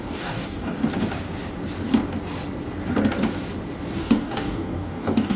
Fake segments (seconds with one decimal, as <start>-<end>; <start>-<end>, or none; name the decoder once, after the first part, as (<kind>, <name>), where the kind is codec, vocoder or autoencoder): 0.0-0.8 (codec, DAC); 4.0-5.4